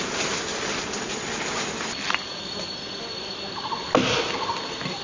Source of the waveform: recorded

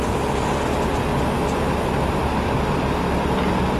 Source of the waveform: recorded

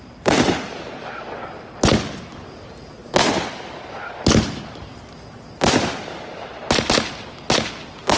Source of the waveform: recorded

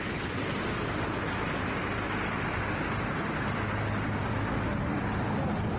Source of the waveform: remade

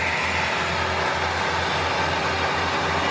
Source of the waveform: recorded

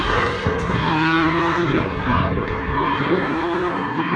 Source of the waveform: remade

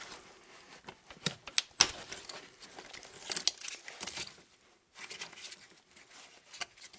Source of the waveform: recorded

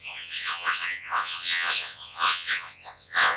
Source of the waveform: remade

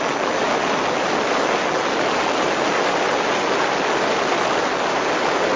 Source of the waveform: recorded